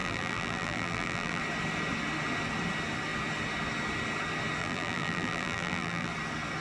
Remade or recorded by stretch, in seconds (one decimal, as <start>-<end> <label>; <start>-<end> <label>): 0.0-1.4 remade; 1.4-4.6 recorded; 4.6-6.1 remade; 6.1-6.6 recorded